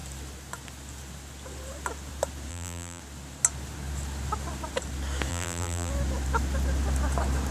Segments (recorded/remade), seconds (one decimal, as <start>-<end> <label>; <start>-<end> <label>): 0.0-2.5 recorded; 2.5-3.0 remade; 3.0-5.3 recorded; 5.3-5.9 remade; 5.9-7.5 recorded